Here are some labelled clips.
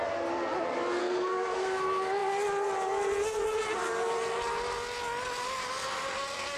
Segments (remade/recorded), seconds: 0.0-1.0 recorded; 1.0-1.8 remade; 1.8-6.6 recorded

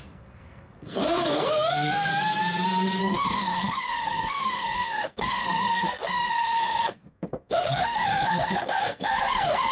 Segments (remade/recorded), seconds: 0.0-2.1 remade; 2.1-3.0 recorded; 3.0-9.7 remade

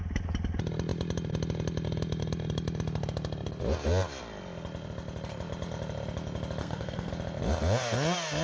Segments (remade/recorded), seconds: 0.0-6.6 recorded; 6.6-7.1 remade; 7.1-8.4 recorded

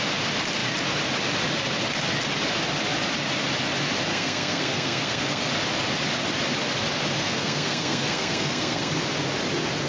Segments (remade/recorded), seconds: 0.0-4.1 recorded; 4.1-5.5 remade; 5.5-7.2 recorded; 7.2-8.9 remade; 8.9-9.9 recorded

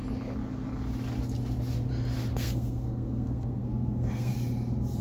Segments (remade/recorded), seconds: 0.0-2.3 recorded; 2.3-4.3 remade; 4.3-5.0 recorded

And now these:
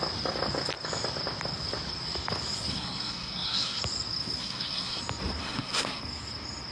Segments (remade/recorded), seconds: 0.0-2.7 recorded; 2.7-3.8 remade; 3.8-4.4 recorded; 4.4-5.0 remade; 5.0-5.4 recorded; 5.4-6.0 remade; 6.0-6.7 recorded